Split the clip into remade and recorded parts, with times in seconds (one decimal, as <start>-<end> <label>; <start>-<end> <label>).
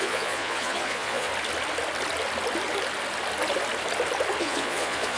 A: 0.0-1.3 remade; 1.3-4.4 recorded; 4.4-5.2 remade